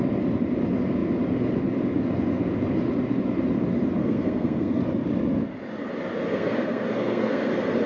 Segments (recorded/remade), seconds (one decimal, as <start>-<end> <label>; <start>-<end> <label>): 0.0-4.0 recorded; 4.0-4.8 remade; 4.8-6.3 recorded; 6.3-7.5 remade; 7.5-7.9 recorded

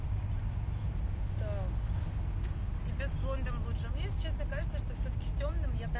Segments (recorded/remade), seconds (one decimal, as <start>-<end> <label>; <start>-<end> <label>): 0.0-6.0 recorded

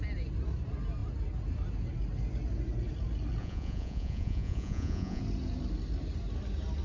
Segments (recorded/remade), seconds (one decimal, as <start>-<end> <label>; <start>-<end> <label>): 0.0-3.4 recorded; 3.4-5.2 remade; 5.2-6.8 recorded

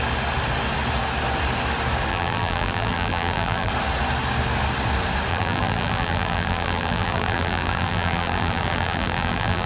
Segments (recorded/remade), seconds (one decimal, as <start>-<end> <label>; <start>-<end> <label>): 0.0-2.1 recorded; 2.1-3.7 remade; 3.7-5.3 recorded; 5.3-9.7 remade

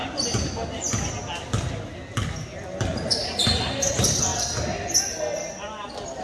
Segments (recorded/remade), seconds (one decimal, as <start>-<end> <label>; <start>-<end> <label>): 0.0-0.5 remade; 0.5-6.2 recorded